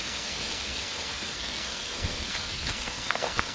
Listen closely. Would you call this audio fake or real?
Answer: fake